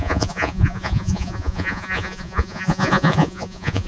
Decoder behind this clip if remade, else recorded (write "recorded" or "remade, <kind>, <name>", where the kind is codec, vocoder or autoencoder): remade, vocoder, Vocos